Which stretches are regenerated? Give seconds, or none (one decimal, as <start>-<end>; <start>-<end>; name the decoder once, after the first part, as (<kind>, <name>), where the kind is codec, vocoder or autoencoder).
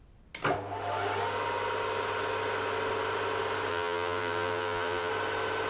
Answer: 3.7-5.1 (vocoder, BigVGAN v2)